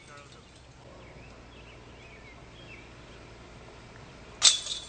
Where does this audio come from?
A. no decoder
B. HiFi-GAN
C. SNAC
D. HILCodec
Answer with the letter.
A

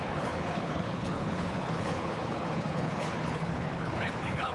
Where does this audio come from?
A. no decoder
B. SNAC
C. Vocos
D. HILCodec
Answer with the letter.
D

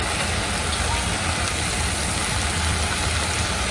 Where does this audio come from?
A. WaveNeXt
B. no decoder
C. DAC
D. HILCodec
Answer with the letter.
B